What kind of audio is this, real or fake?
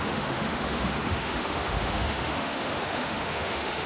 fake